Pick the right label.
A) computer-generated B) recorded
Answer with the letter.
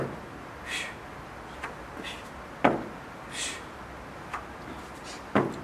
B